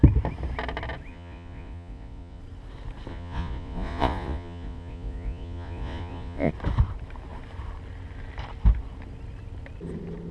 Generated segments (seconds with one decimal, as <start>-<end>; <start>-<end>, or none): 1.1-2.4; 3.1-6.5